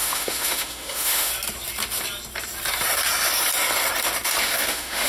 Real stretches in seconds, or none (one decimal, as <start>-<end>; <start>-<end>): 1.3-4.4

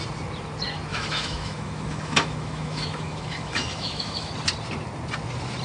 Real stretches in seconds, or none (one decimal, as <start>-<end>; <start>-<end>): 0.0-0.9; 4.3-5.6

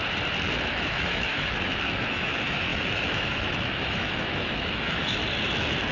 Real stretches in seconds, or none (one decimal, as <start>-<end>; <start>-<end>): 0.0-0.7; 5.2-5.9

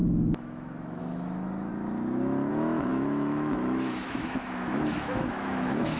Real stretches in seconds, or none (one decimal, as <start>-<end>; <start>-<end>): 1.7-2.5

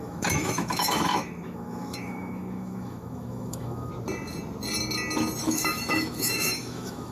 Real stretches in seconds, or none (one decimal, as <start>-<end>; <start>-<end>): 3.9-5.4

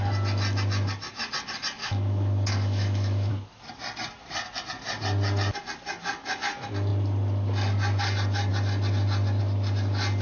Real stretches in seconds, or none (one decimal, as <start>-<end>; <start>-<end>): 0.0-1.8; 3.3-10.2